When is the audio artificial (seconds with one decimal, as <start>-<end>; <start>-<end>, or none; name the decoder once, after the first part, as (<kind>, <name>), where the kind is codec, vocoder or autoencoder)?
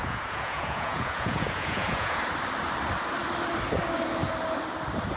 0.0-2.2 (vocoder, Vocos)